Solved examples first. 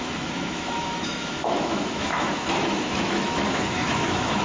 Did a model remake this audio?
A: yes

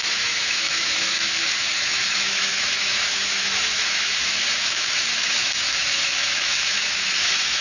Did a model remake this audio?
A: yes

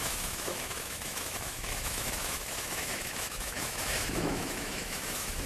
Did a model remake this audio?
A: yes